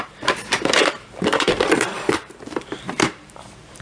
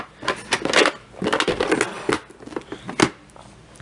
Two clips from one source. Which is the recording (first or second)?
second